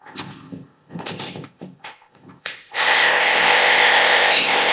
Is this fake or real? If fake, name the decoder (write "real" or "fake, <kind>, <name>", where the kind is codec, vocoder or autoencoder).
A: fake, codec, ZipCodec